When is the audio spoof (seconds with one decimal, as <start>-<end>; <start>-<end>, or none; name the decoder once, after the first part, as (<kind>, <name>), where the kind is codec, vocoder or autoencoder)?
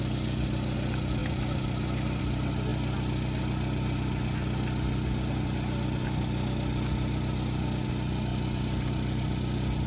none